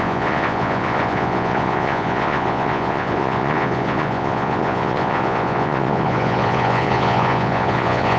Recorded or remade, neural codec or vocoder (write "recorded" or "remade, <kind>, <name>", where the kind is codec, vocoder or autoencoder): remade, vocoder, Vocos